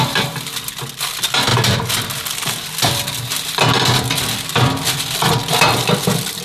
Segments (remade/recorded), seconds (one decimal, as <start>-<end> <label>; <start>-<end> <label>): 0.0-6.4 recorded